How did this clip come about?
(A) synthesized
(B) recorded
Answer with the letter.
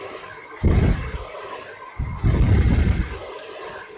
B